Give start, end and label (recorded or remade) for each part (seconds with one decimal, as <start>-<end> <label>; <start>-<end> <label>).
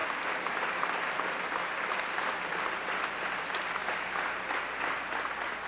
0.0-3.4 recorded; 3.4-3.8 remade; 3.8-5.2 recorded; 5.2-5.7 remade